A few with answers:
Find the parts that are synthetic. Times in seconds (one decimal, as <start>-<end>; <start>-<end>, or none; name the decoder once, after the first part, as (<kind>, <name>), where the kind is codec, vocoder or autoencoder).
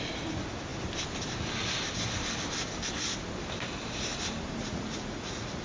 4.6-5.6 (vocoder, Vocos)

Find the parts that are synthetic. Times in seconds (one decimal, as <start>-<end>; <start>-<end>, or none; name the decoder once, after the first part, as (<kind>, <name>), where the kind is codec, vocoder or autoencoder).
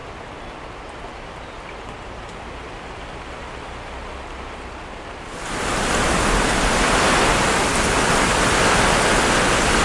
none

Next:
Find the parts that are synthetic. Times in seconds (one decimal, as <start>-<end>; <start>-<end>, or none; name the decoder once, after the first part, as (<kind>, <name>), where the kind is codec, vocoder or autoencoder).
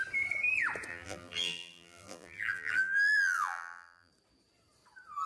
0.9-4.1 (vocoder, BigVGAN v2)